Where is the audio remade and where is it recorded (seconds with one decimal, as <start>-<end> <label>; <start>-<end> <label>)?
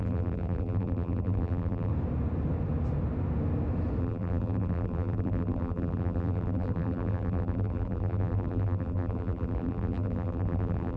0.0-1.9 remade; 1.9-4.0 recorded; 4.0-11.0 remade